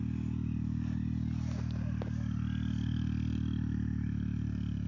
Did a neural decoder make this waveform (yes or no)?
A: no